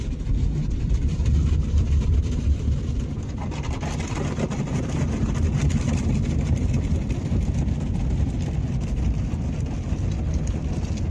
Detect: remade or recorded recorded